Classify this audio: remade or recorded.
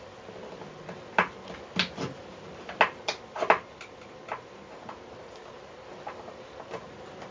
recorded